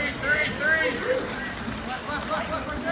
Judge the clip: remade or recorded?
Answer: recorded